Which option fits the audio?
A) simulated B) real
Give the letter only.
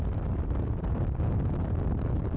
B